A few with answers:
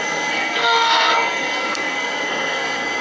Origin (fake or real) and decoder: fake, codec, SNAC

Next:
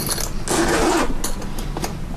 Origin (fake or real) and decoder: real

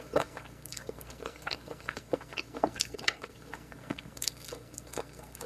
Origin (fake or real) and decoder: fake, codec, SNAC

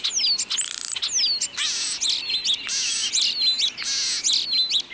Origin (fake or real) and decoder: real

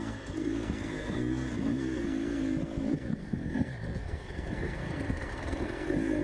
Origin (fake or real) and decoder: fake, codec, SNAC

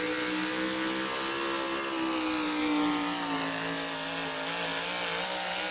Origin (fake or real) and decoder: real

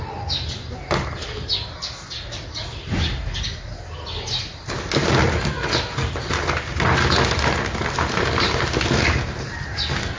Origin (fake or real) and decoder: real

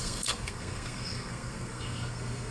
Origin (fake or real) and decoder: fake, codec, SNAC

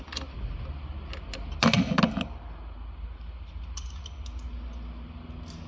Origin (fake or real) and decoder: real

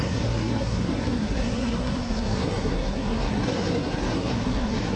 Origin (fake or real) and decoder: fake, codec, SNAC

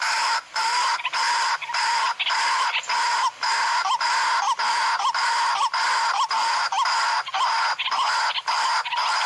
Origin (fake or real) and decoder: real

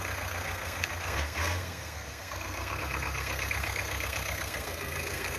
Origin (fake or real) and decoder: fake, codec, SNAC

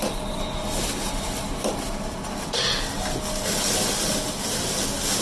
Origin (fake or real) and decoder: real